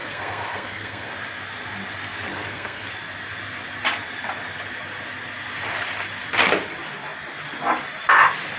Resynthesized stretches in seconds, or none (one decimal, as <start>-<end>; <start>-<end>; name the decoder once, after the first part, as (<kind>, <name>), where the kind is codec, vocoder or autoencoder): 0.0-1.1 (codec, SNAC); 2.3-2.9